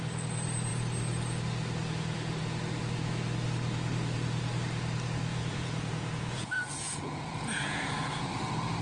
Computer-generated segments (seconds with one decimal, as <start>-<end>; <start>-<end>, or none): 5.3-8.3